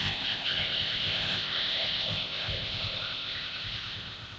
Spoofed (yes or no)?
yes